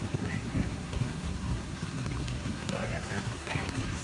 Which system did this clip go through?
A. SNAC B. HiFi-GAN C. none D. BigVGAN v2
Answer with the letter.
A